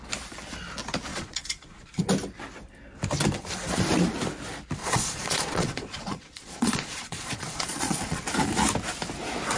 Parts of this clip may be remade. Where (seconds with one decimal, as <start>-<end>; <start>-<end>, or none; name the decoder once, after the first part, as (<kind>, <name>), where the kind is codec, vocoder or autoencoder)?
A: 1.1-2.0 (vocoder, Vocos); 4.8-8.2

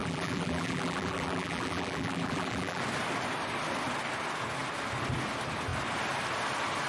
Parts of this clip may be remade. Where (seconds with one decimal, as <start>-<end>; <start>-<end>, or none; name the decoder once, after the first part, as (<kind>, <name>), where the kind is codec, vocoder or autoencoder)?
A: 0.0-2.8 (vocoder, BigVGAN v2)

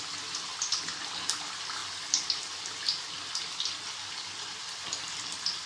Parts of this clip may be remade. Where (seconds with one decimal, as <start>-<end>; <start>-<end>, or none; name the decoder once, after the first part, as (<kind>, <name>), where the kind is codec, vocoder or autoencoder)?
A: none

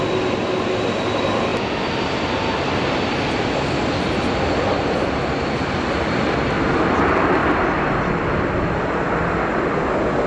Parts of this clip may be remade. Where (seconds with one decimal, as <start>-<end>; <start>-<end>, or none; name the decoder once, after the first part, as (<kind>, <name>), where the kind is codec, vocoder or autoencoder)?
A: none

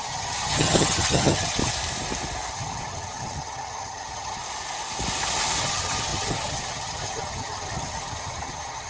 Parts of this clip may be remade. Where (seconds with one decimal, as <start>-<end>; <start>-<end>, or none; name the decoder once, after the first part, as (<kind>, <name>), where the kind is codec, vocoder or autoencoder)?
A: 0.0-1.6 (vocoder, HiFi-GAN); 2.5-4.4; 5.6-8.9

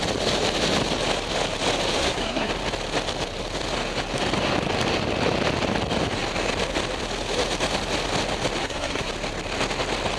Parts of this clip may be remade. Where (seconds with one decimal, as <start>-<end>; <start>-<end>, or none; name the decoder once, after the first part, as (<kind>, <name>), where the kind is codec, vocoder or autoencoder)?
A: 2.0-2.5 (codec, SNAC); 8.6-9.1